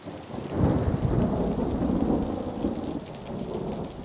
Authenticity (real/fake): real